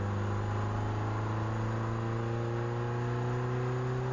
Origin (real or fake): real